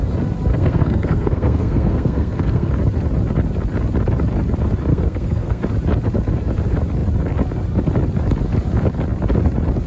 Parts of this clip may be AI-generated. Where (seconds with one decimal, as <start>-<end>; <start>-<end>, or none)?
0.5-2.7; 4.9-5.6